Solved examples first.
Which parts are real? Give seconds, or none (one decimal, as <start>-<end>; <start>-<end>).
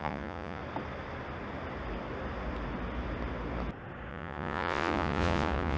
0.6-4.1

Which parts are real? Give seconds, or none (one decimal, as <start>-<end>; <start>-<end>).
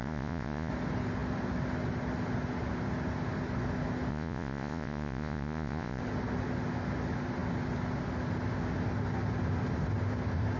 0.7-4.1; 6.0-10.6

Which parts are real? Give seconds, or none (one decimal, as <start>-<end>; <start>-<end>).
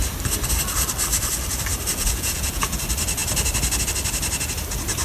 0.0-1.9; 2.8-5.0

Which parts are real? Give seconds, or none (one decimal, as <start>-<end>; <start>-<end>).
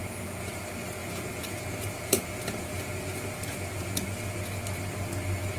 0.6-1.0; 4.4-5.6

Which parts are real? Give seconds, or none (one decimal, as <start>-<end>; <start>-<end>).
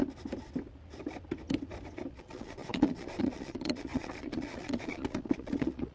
0.0-2.1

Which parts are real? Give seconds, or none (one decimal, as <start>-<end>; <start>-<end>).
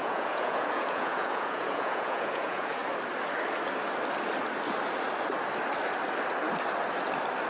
2.8-7.5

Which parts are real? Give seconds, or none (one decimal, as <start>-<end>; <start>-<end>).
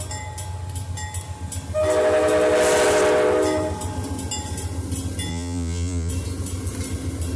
0.0-5.3; 6.1-7.4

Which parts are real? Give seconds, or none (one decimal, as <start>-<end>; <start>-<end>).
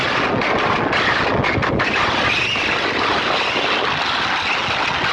0.0-5.1